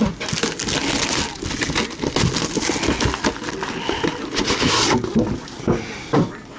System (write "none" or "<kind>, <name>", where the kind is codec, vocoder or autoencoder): none